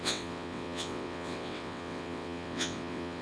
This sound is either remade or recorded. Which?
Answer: remade